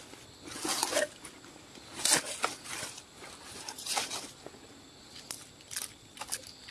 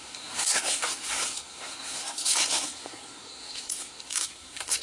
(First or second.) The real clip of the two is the first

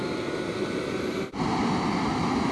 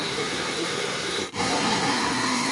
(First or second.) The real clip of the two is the first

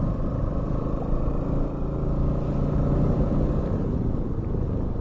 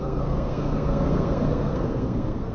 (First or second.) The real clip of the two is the first